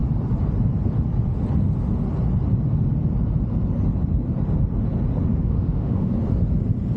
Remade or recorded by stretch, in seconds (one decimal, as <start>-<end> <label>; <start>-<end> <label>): 0.0-5.3 recorded; 5.3-6.1 remade; 6.1-7.0 recorded